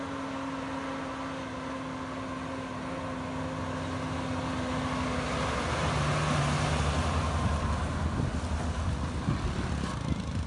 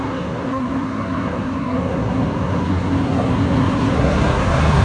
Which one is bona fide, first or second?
first